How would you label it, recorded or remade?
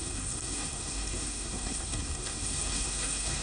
remade